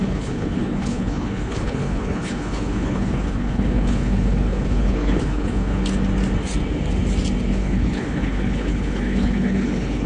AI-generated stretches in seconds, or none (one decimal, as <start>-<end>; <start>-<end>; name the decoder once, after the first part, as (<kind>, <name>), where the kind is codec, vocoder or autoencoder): 0.0-5.8 (codec, HILCodec); 7.5-10.1